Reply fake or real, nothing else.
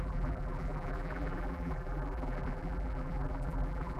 fake